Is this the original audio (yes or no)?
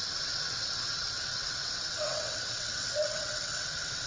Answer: no